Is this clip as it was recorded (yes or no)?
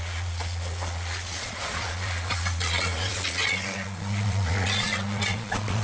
no